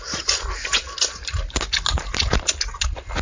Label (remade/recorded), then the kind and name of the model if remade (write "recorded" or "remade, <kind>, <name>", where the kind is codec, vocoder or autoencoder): recorded